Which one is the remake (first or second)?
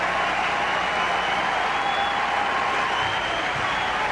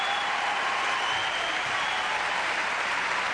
second